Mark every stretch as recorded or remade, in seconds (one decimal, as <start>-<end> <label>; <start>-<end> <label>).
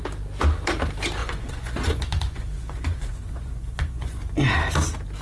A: 0.0-1.2 recorded; 1.2-4.3 remade; 4.3-5.2 recorded